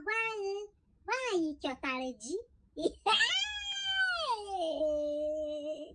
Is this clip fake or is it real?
fake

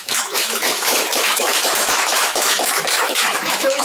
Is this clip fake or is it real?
fake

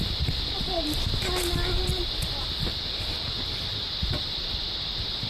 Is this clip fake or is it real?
real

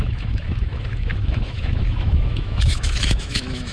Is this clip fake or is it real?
fake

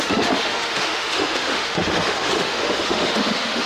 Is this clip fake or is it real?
fake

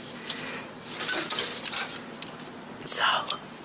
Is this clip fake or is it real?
real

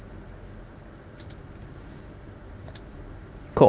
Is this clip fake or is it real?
real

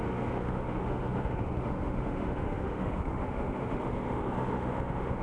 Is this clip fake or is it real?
fake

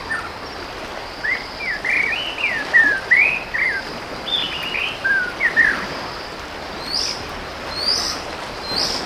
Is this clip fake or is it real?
real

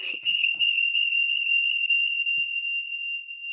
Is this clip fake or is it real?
fake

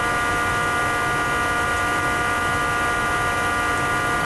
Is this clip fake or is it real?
real